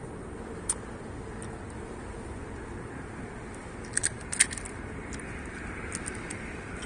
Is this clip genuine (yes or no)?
yes